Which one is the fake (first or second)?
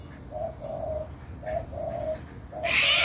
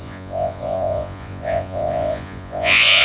second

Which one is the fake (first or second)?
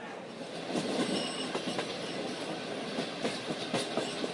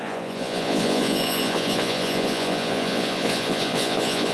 second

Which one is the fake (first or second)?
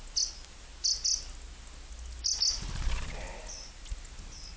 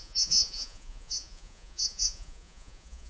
second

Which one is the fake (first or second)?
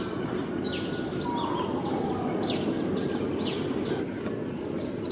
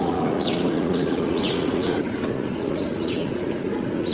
second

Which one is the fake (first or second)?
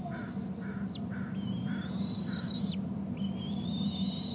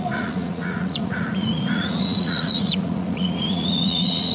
second